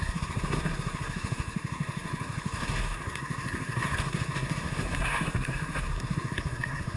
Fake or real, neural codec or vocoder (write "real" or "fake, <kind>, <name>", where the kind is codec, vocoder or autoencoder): fake, codec, SNAC